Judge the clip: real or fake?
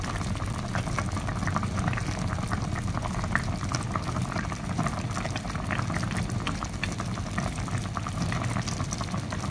fake